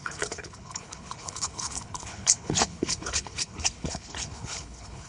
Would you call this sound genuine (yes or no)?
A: no